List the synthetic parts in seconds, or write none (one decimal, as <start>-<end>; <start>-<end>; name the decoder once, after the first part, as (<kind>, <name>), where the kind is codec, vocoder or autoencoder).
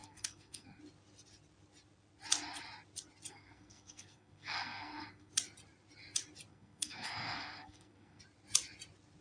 0.0-0.8 (codec, SNAC); 3.3-5.3; 6.5-8.2